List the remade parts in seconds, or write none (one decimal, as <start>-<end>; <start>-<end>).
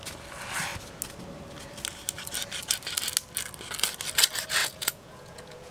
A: 4.6-5.7